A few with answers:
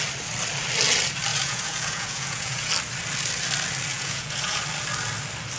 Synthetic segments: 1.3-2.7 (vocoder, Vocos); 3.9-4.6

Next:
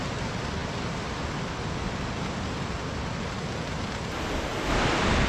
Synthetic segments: none

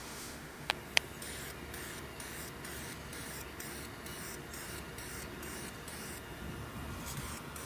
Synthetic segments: 0.0-0.7 (autoencoder, DAC-VAE)